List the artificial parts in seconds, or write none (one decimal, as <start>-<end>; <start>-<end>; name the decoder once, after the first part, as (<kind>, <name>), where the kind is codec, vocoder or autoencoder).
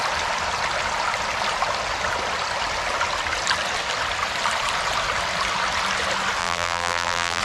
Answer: 6.4-7.4 (vocoder, BigVGAN v2)